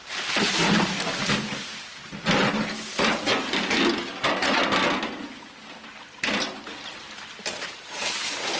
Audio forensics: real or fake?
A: real